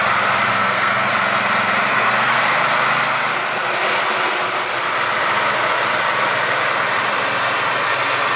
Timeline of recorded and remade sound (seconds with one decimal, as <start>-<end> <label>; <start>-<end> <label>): 0.0-0.5 recorded; 0.5-1.1 remade; 1.1-1.9 recorded; 1.9-2.4 remade; 2.4-8.4 recorded